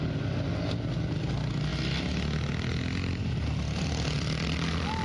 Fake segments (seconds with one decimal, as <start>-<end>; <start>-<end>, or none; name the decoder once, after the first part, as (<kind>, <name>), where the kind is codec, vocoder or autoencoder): none

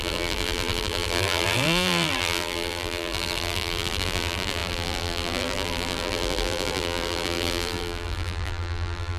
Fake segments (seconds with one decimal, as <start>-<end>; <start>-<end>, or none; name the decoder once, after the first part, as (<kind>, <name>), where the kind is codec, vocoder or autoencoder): 0.0-9.2 (vocoder, BigVGAN v2)

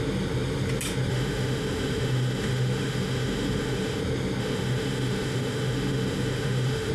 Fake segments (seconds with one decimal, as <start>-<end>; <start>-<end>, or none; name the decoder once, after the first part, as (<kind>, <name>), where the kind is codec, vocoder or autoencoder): 1.1-4.0 (autoencoder, DAC-VAE); 4.4-6.9

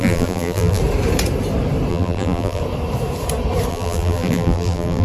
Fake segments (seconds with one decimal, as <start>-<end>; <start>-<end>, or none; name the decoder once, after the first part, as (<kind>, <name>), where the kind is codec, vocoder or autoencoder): 0.0-0.8 (vocoder, BigVGAN v2); 1.9-2.6; 3.7-5.0

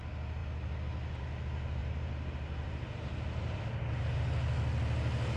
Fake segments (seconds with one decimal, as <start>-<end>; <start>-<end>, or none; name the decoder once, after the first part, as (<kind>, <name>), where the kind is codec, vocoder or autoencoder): 1.8-3.6 (vocoder, BigVGAN v2)